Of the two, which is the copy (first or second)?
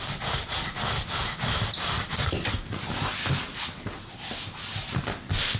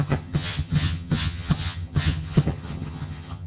second